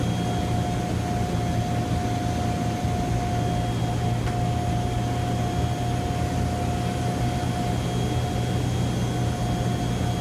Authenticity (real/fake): real